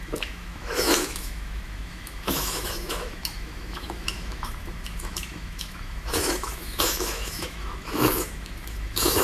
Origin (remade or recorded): remade